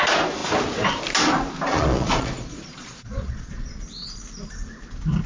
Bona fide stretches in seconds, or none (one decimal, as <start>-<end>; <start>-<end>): 0.0-1.7; 3.8-5.3